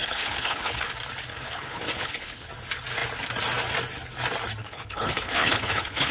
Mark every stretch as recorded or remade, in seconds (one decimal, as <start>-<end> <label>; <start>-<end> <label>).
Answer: 0.0-0.9 remade; 0.9-1.3 recorded; 1.3-2.5 remade; 2.5-4.6 recorded; 4.6-6.1 remade